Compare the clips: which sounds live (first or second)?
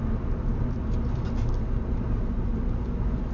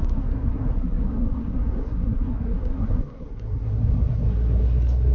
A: first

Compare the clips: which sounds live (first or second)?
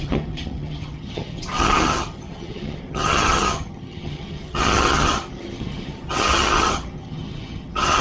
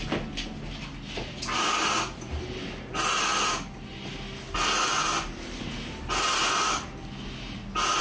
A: second